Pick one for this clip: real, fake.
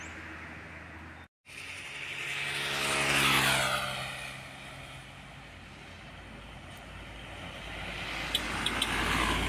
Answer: real